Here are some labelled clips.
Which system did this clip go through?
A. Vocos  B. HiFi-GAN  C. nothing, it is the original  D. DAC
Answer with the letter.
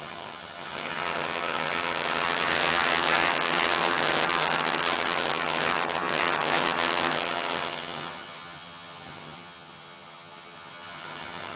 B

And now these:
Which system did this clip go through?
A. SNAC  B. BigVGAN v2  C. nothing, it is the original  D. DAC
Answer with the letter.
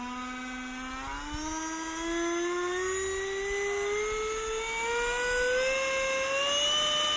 C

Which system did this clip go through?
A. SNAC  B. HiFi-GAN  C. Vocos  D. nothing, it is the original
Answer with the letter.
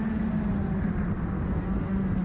D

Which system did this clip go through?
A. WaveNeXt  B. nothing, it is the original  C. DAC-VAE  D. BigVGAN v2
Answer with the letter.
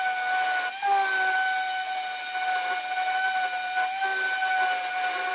B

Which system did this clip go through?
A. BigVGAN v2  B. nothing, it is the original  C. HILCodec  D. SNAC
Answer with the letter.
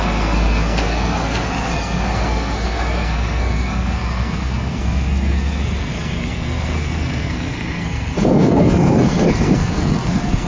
D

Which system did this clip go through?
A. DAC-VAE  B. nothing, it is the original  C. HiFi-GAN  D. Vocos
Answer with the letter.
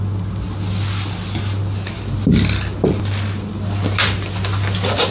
B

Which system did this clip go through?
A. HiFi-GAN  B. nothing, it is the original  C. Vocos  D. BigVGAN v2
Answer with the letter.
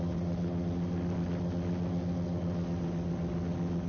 B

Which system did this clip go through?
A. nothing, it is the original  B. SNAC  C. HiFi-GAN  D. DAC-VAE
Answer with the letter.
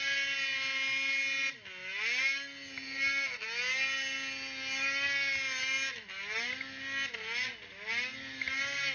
A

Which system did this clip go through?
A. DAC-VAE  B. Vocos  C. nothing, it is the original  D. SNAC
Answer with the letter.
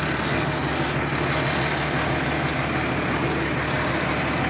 C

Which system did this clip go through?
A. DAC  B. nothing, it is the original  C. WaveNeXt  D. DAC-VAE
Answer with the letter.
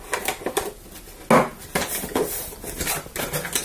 B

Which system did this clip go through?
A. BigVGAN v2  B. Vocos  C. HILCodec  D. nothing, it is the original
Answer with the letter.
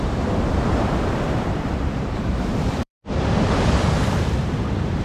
A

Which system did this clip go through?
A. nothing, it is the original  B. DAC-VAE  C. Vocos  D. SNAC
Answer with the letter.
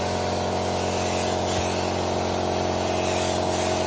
A